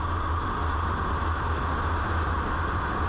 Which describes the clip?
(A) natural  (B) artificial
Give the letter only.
A